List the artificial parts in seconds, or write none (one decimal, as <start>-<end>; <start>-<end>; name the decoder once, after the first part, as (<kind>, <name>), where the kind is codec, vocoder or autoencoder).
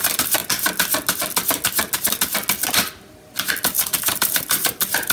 0.0-0.4 (vocoder, BigVGAN v2); 3.5-5.1